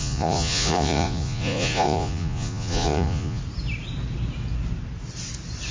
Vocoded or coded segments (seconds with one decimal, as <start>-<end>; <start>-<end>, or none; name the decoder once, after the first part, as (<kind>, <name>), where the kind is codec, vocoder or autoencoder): 0.0-3.4 (vocoder, Vocos)